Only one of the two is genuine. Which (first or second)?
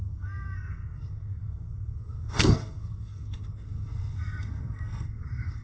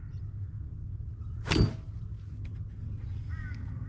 second